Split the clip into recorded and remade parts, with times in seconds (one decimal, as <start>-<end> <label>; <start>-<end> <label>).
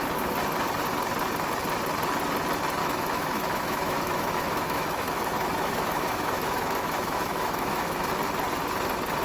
0.0-2.8 recorded; 2.8-8.1 remade; 8.1-9.2 recorded